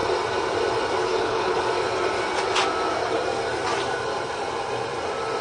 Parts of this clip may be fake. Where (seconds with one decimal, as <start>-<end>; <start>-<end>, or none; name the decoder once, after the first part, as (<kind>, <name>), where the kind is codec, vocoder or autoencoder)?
1.0-1.6 (codec, HILCodec)